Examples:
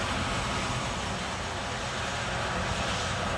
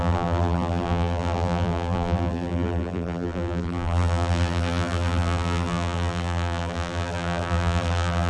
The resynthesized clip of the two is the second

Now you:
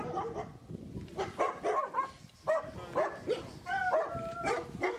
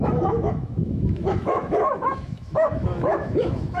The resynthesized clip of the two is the second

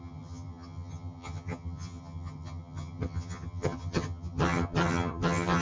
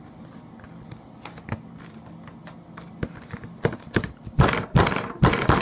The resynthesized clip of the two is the first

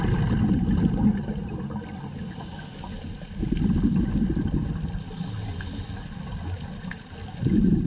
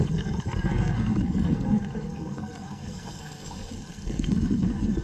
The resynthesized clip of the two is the second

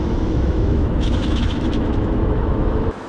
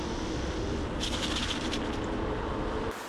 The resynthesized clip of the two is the first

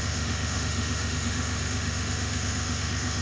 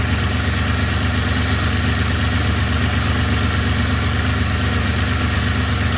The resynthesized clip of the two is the first